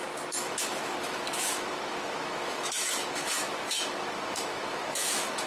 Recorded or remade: remade